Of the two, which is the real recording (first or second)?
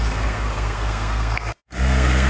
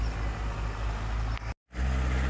second